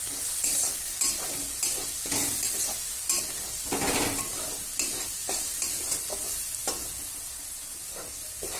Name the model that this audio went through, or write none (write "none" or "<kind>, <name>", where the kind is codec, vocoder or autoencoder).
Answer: none